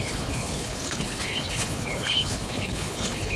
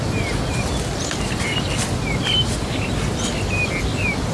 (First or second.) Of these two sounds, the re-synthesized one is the first